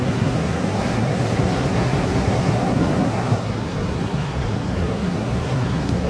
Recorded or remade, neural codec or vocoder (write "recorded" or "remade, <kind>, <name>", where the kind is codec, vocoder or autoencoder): remade, codec, SNAC